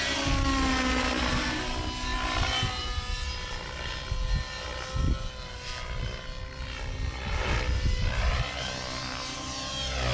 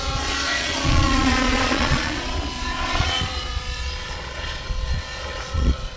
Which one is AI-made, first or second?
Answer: second